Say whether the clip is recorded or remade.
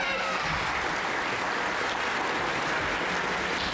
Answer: recorded